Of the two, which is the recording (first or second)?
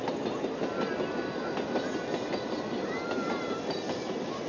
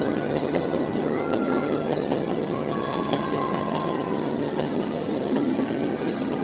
first